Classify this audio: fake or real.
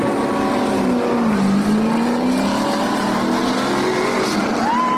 real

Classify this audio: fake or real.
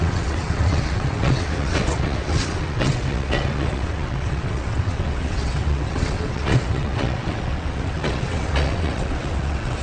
fake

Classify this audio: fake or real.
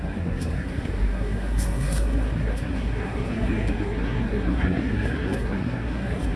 fake